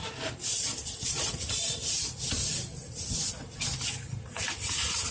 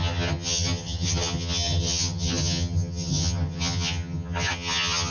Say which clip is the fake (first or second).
second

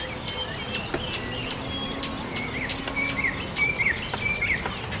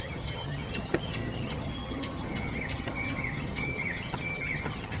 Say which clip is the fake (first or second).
second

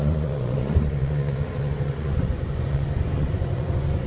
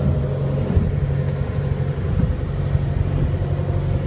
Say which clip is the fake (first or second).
first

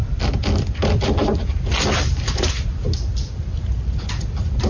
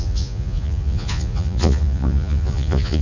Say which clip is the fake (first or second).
second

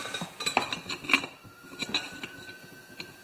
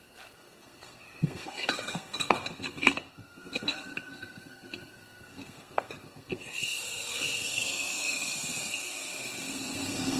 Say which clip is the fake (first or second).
second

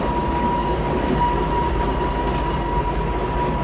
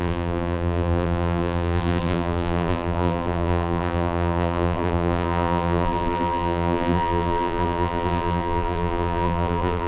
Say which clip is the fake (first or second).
second